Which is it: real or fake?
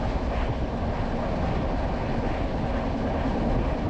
real